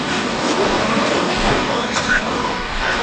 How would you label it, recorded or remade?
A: remade